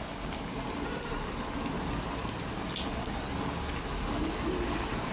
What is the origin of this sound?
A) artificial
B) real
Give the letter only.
B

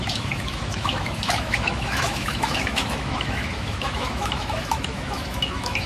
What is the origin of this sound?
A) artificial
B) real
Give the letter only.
A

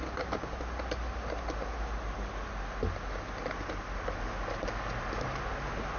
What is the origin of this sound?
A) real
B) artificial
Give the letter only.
A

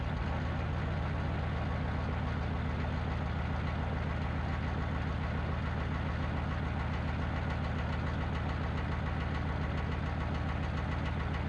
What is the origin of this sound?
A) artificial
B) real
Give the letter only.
B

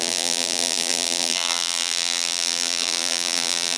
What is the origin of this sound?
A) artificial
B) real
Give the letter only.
A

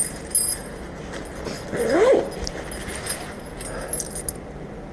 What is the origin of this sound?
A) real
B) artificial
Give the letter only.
A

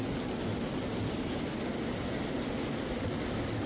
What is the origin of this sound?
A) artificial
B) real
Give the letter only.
B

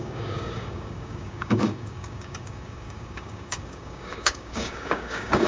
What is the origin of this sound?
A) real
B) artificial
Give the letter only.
B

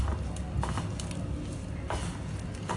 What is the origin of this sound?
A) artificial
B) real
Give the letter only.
B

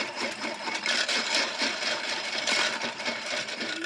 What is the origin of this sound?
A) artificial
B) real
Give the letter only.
A